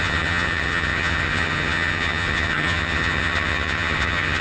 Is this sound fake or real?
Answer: fake